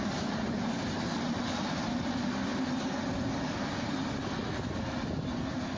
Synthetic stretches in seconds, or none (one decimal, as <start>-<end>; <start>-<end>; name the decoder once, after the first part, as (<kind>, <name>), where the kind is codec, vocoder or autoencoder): none